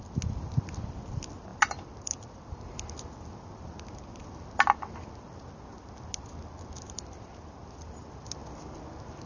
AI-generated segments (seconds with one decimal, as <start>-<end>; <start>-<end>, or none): none